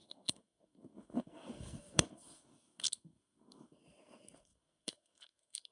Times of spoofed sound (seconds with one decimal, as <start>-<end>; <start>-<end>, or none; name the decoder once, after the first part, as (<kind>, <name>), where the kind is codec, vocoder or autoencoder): 0.0-5.7 (codec, SNAC)